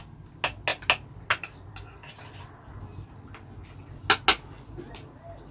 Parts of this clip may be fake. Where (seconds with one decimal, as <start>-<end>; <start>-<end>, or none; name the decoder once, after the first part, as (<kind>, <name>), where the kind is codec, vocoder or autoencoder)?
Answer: none